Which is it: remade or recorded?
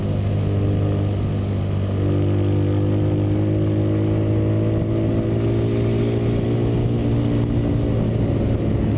recorded